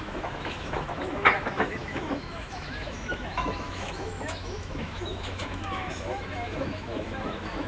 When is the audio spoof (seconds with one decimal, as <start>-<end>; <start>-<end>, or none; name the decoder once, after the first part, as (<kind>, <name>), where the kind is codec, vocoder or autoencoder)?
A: 0.0-7.7 (autoencoder, DAC-VAE)